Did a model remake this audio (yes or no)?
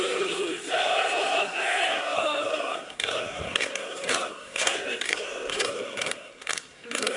yes